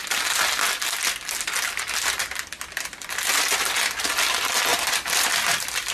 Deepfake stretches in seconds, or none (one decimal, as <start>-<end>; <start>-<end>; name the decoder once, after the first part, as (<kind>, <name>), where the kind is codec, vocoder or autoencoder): 4.7-5.3 (vocoder, BigVGAN v2)